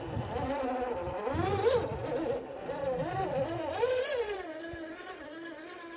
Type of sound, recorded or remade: remade